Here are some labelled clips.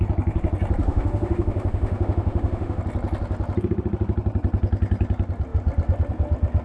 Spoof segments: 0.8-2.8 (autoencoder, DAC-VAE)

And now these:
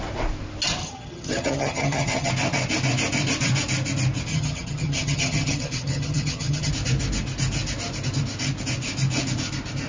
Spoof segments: 0.8-2.3 (vocoder, HiFi-GAN); 4.3-6.7